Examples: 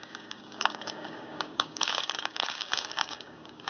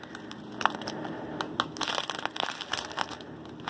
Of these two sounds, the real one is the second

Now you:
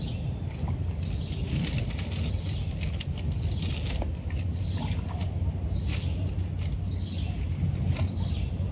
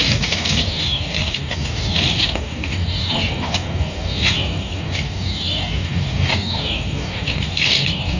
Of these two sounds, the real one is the first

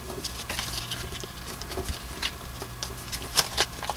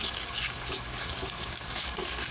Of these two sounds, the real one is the first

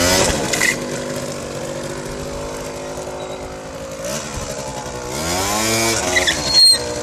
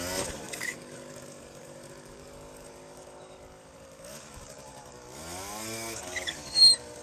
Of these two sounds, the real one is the first